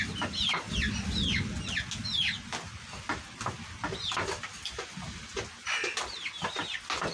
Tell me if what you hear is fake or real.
real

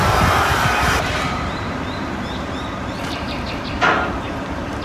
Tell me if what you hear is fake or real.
fake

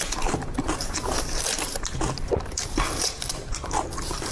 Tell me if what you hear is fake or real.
fake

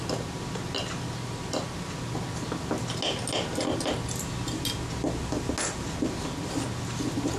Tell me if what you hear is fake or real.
real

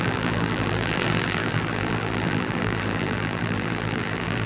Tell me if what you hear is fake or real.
fake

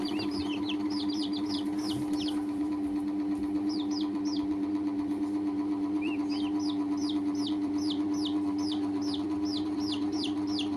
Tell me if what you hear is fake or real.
fake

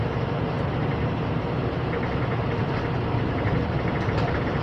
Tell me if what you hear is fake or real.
fake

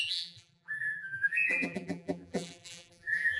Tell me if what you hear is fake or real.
fake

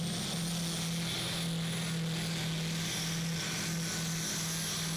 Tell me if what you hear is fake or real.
real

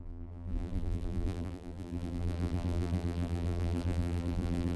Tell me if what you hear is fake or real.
fake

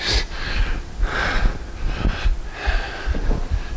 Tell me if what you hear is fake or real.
real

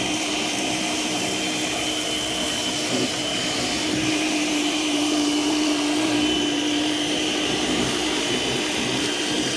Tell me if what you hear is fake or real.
fake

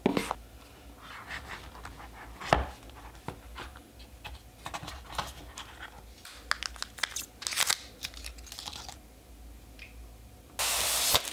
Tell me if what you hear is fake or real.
real